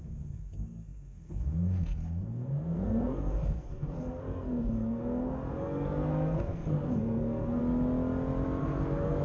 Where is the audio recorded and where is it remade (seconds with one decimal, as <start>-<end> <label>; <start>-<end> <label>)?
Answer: 0.0-7.6 remade; 7.6-8.6 recorded; 8.6-9.2 remade